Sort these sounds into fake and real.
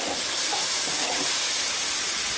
real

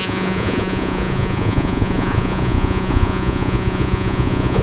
fake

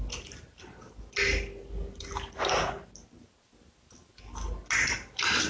real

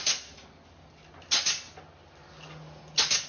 real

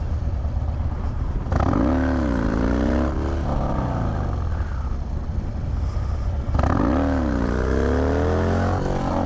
real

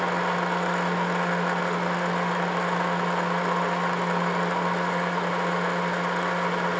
real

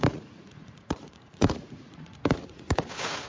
fake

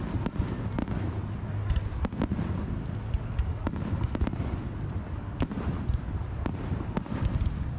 real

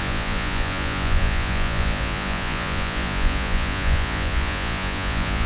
fake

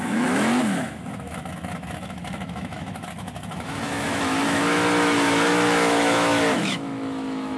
fake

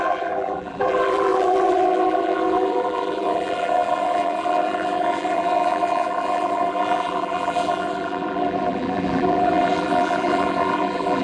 fake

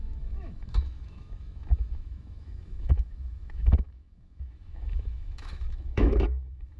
fake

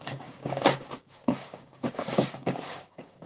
fake